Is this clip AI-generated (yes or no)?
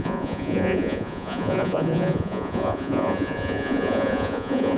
yes